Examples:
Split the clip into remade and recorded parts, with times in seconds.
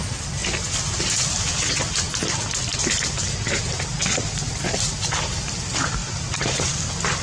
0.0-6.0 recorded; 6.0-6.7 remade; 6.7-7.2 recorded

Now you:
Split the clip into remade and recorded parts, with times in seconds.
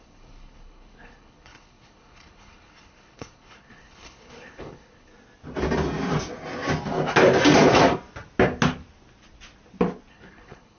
0.0-5.1 remade; 5.1-10.1 recorded; 10.1-10.8 remade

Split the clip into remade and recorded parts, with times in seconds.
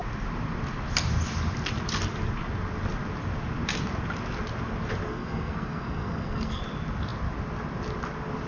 0.0-5.1 recorded; 5.1-6.6 remade; 6.6-8.5 recorded